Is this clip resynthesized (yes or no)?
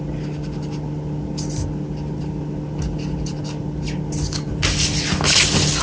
no